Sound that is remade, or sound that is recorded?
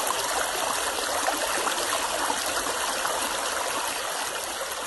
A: recorded